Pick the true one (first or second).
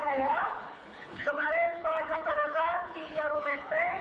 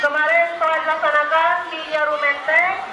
second